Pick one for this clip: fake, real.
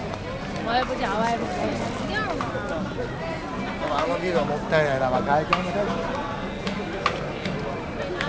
real